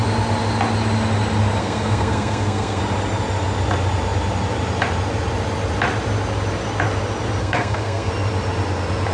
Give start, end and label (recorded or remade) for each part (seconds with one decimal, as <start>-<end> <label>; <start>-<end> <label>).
0.0-1.6 recorded; 1.6-2.8 remade; 2.8-7.4 recorded; 7.4-8.1 remade; 8.1-9.1 recorded